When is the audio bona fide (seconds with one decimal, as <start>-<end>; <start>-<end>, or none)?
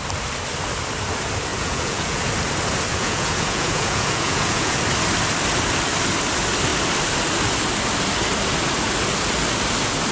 0.0-1.5; 2.3-2.9; 4.8-10.1